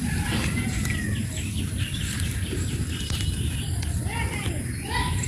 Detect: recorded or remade recorded